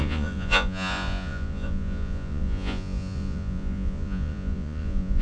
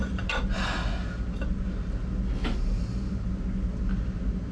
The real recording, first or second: second